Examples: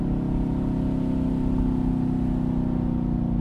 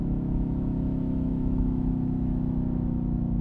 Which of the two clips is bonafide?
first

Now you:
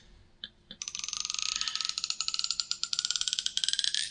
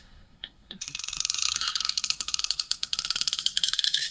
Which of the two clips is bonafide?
first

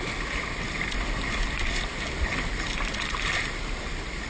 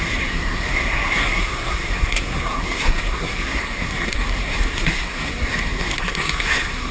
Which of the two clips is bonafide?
first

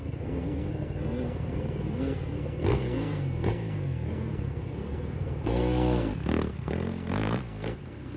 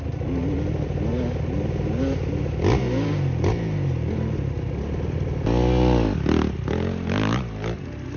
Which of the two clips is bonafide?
second